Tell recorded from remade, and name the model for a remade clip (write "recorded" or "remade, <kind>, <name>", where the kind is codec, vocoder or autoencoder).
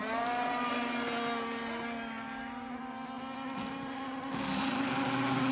recorded